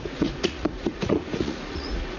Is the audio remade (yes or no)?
yes